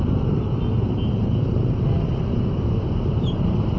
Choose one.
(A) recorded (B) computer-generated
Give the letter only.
A